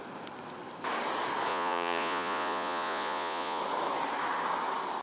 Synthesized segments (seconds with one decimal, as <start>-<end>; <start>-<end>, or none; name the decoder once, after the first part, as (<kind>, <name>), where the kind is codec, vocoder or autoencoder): 1.5-3.6 (vocoder, Vocos)